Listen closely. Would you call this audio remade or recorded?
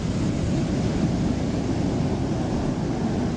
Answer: recorded